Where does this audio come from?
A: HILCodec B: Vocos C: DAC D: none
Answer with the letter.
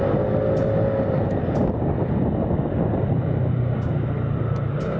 D